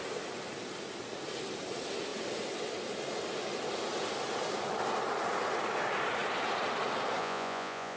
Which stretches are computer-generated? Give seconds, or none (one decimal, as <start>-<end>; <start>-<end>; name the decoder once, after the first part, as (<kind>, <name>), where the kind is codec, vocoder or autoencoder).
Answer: 7.2-8.0 (vocoder, Vocos)